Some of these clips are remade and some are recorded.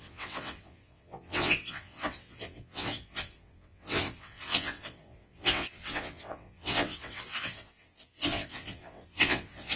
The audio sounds remade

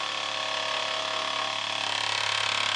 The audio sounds recorded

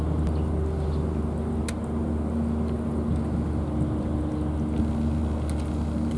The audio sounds recorded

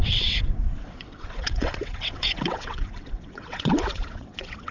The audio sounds remade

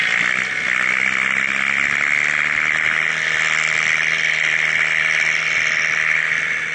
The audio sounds recorded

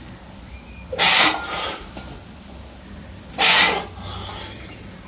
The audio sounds recorded